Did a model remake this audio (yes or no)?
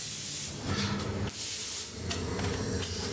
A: no